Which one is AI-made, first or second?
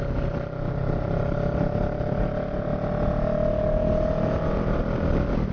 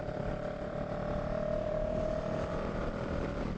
second